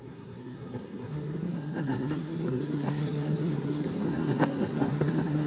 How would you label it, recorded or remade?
remade